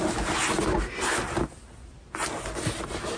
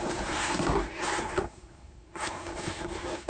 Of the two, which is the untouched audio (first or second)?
first